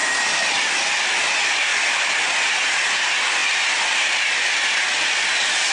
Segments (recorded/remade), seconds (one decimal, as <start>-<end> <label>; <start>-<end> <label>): 0.0-0.7 remade; 0.7-1.7 recorded; 1.7-2.5 remade; 2.5-5.7 recorded